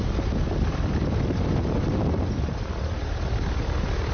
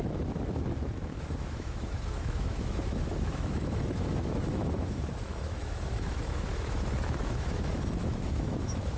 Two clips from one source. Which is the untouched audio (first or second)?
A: first